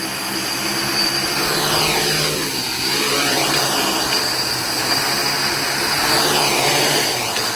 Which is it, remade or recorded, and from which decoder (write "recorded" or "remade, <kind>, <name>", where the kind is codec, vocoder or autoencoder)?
recorded